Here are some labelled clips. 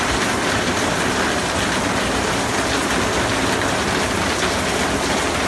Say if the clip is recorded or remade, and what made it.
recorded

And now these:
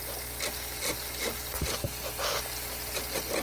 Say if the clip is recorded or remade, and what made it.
recorded